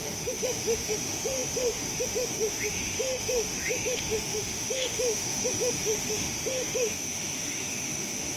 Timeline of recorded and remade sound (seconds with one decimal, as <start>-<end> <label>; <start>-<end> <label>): 0.0-8.4 remade